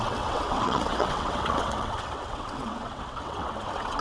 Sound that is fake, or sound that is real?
fake